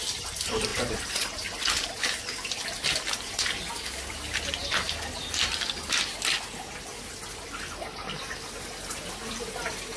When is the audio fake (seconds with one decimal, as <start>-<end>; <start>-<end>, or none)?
none